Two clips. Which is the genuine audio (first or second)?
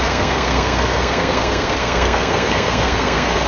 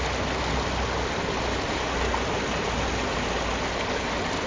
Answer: second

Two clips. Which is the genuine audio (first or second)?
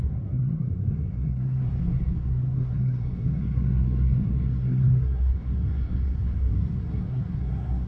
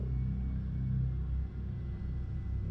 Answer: second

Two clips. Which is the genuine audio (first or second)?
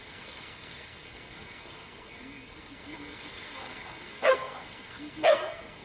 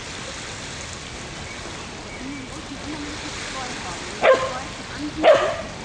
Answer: second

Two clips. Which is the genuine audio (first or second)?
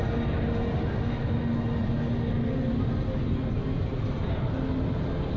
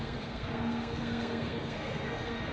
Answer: first